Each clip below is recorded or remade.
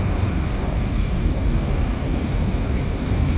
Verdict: remade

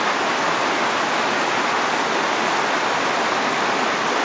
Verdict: recorded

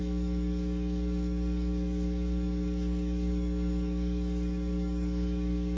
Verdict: remade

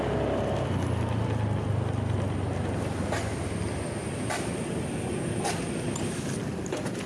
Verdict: recorded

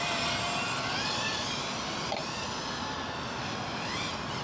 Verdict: recorded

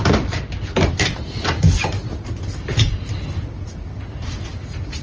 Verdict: recorded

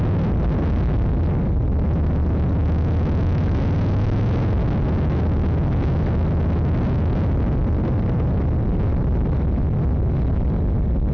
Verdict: recorded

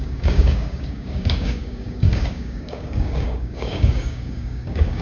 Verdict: remade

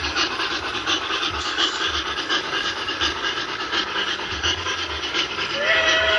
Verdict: remade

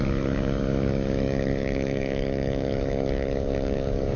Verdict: remade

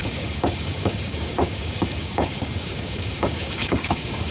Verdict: remade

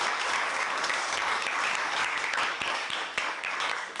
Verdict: remade